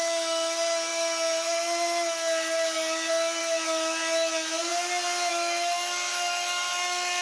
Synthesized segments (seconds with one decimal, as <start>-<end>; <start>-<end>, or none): 0.0-4.7; 5.3-7.2